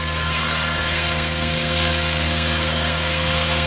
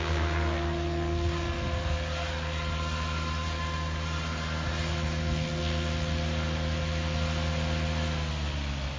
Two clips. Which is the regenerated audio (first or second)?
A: first